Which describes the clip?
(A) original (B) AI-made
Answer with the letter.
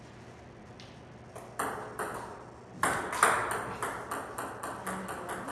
A